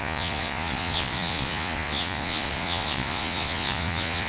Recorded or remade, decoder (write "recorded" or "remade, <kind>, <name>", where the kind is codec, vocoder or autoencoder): remade, vocoder, Vocos